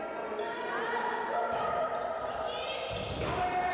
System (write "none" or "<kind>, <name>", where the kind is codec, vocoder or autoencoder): none